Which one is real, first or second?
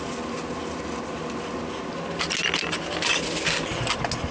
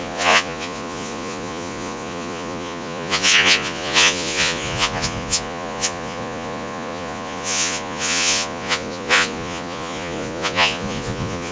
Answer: first